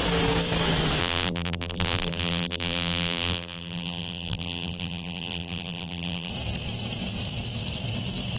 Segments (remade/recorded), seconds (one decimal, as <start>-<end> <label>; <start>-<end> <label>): 0.0-1.0 recorded; 1.0-6.3 remade; 6.3-8.4 recorded